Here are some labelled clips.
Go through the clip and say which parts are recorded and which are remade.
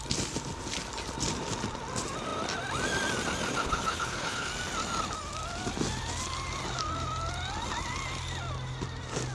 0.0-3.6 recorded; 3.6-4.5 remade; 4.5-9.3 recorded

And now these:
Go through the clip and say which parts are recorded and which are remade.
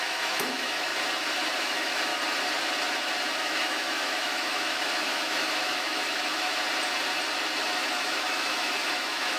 0.0-0.9 remade; 0.9-1.6 recorded; 1.6-2.1 remade; 2.1-3.4 recorded; 3.4-6.6 remade; 6.6-7.6 recorded; 7.6-9.4 remade